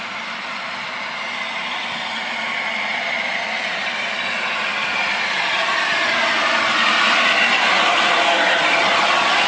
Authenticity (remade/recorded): recorded